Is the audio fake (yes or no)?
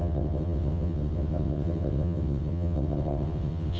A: yes